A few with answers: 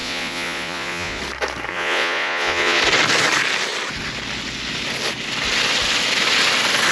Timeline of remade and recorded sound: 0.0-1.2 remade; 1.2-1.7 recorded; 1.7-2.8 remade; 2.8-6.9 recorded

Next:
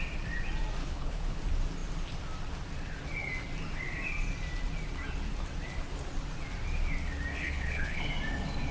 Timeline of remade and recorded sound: 0.0-0.8 recorded; 0.8-1.4 remade; 1.4-7.3 recorded; 7.3-8.1 remade; 8.1-8.7 recorded